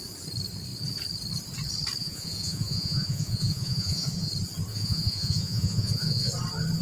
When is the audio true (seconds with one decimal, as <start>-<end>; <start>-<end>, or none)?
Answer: 0.0-2.0; 4.3-4.7; 6.3-6.8